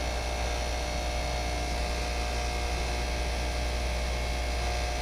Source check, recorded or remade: recorded